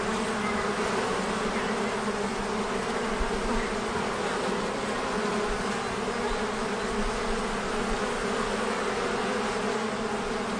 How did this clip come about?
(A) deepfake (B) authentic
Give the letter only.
B